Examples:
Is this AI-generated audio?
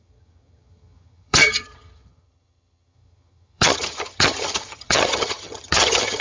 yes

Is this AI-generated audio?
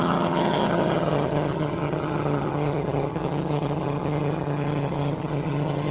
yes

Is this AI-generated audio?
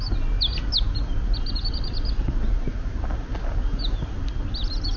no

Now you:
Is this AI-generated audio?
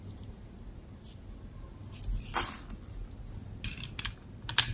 no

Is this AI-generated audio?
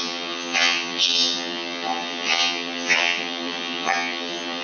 yes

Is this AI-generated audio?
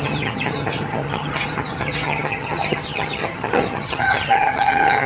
yes